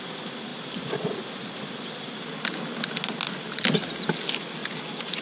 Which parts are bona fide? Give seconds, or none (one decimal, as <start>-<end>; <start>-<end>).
0.0-5.2